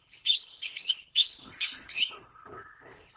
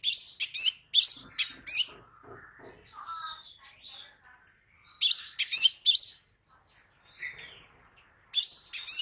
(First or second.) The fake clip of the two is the first